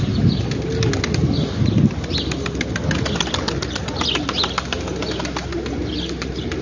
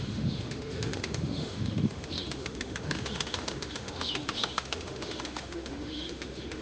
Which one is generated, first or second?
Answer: second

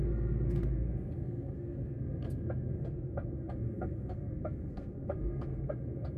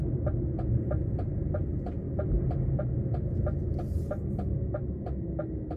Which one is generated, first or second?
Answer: first